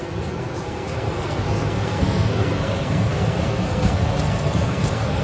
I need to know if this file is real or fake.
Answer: fake